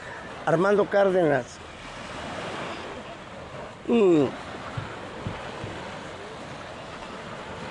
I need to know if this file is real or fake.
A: real